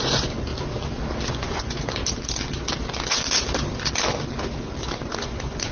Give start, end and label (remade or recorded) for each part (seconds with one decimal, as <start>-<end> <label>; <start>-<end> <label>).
0.0-0.5 remade; 0.5-1.3 recorded; 1.3-2.0 remade; 2.0-4.8 recorded; 4.8-5.7 remade